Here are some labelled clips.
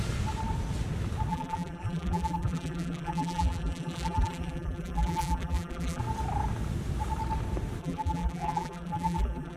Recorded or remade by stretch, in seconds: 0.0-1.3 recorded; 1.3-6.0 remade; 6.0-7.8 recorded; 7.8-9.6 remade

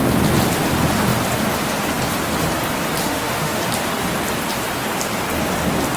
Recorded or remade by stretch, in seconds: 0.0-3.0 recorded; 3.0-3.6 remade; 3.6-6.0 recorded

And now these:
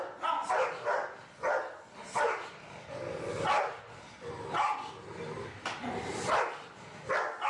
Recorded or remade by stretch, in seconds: 0.0-7.5 recorded

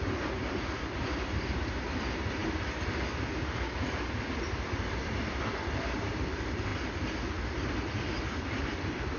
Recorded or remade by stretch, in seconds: 0.0-9.2 recorded

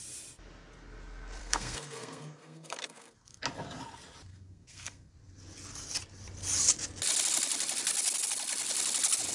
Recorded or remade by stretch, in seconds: 0.0-1.4 recorded; 1.4-3.4 remade; 3.4-4.3 recorded; 4.3-5.1 remade; 5.1-9.3 recorded

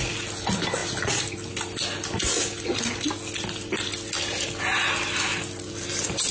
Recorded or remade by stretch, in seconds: 0.0-6.3 recorded